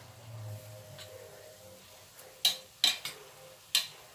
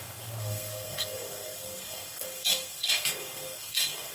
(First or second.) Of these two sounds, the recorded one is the first